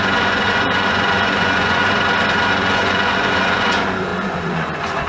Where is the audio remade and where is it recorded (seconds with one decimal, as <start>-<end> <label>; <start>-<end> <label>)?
0.0-1.8 remade; 1.8-2.5 recorded; 2.5-5.1 remade